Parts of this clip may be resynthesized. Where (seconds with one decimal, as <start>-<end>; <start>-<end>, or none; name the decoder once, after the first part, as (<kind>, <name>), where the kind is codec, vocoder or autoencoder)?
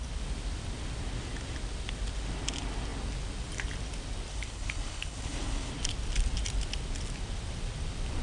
4.3-5.7 (codec, HILCodec)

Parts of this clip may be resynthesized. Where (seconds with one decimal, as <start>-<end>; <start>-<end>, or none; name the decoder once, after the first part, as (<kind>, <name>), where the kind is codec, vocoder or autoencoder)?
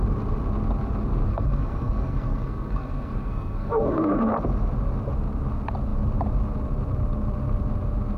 1.3-4.3 (codec, SNAC)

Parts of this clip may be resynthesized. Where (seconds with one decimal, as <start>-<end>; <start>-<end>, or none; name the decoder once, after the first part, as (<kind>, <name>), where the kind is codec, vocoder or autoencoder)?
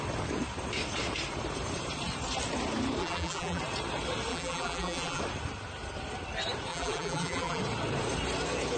3.0-3.6 (vocoder, BigVGAN v2); 4.3-5.2; 6.7-7.6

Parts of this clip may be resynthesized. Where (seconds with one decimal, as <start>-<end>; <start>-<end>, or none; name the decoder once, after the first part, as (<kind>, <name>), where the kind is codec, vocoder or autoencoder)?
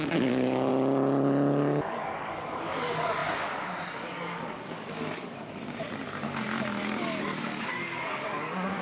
0.0-0.7 (codec, DAC); 1.9-8.8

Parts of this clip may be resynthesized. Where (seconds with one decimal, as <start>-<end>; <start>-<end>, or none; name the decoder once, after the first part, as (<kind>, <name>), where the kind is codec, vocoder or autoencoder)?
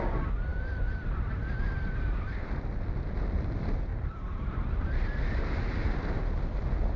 none